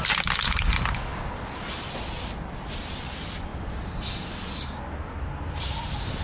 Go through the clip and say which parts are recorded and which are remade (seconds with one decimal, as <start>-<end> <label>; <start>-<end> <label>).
0.0-6.2 recorded